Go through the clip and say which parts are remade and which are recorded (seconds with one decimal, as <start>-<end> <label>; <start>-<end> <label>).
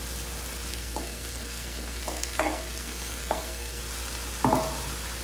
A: 0.0-0.7 recorded; 0.7-3.8 remade; 3.8-5.2 recorded